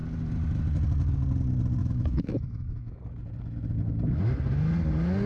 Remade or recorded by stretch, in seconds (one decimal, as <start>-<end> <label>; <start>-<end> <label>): 0.0-1.8 recorded; 1.8-3.0 remade; 3.0-5.3 recorded